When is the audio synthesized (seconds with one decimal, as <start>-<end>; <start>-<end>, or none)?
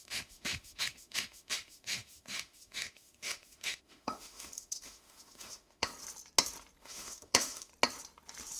0.0-5.9; 6.8-7.7